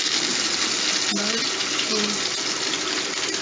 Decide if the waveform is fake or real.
real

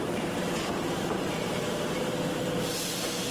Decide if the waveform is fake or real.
real